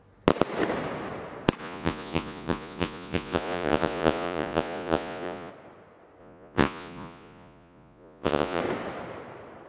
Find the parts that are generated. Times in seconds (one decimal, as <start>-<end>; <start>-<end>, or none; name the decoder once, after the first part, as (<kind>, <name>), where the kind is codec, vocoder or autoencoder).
1.6-5.5 (vocoder, Vocos); 6.2-8.6